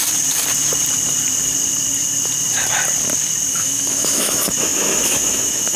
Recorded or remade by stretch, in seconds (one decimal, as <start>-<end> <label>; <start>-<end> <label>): 0.0-3.5 recorded; 3.5-5.8 remade